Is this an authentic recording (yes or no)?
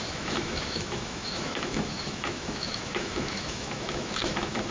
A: no